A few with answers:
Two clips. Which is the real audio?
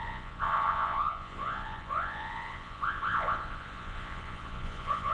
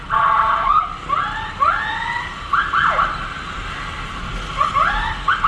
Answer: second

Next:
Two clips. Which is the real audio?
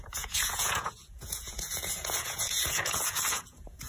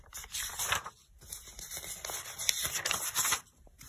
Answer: second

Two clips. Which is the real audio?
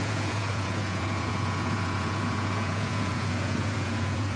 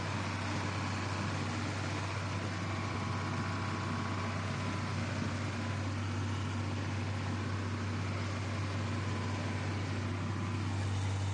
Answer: second